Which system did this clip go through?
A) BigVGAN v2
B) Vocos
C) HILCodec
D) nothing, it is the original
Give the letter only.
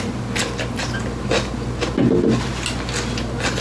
D